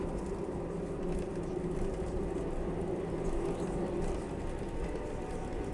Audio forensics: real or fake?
real